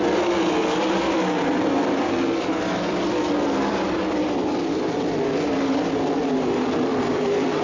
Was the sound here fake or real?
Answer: fake